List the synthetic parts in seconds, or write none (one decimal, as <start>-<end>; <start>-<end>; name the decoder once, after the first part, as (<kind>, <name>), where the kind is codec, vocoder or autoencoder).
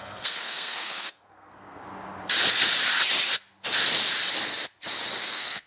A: 0.0-1.8 (codec, SNAC); 5.2-5.7